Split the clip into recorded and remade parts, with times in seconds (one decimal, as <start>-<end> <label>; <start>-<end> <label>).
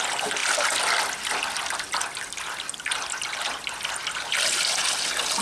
0.0-5.4 recorded